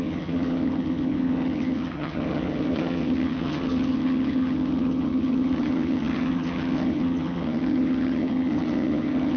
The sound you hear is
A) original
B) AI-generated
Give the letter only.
B